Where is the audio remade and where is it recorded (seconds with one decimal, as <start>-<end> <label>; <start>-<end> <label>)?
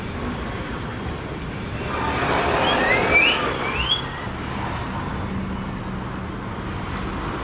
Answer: 0.0-7.4 recorded